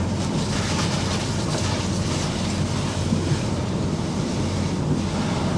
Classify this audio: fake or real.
real